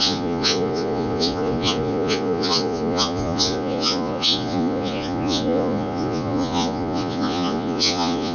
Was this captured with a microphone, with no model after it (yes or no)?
no